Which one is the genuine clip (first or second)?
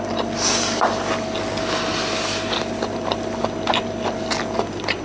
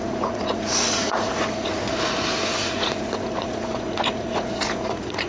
first